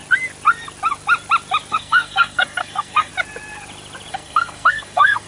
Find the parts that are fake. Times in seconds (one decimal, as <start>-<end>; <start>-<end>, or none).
1.7-3.1; 4.1-5.3